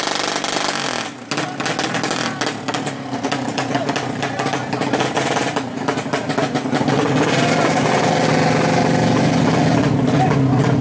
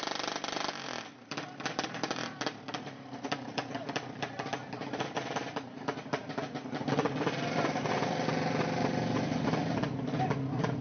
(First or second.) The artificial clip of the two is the second